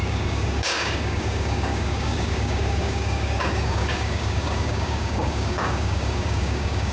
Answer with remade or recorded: remade